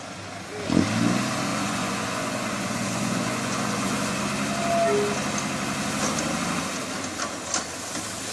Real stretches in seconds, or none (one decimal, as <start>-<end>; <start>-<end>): 0.0-1.5; 4.2-8.3